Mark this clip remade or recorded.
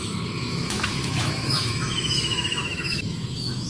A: remade